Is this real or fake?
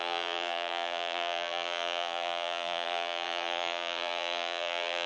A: fake